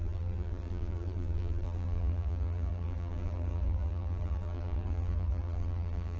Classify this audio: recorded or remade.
remade